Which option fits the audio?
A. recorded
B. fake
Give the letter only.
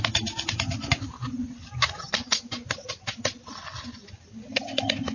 A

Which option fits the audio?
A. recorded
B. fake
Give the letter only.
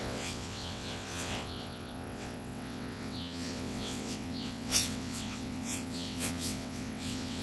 B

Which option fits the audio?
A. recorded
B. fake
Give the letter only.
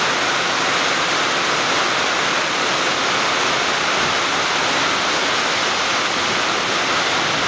A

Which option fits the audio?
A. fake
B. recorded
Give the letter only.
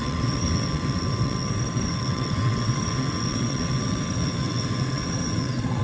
A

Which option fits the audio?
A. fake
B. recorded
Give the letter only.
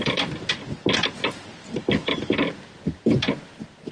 B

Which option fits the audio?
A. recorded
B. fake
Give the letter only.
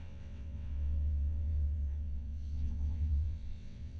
B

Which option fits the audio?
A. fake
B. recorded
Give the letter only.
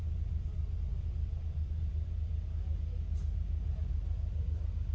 B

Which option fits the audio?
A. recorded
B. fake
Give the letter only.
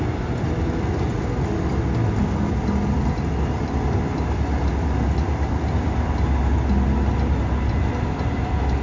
A